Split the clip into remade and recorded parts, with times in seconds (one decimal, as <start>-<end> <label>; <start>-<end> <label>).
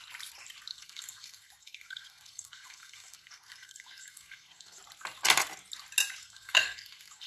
0.0-0.7 recorded; 0.7-4.8 remade; 4.8-6.2 recorded; 6.2-7.3 remade